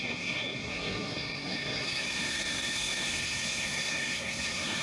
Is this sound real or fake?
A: fake